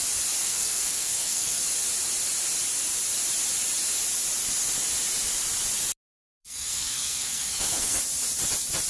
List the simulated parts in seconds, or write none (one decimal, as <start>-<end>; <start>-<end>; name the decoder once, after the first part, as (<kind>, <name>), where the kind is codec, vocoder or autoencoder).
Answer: 0.4-1.6 (codec, SNAC); 6.2-8.0